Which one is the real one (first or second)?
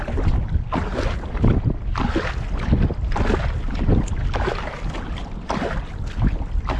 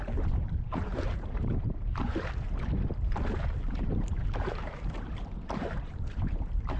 first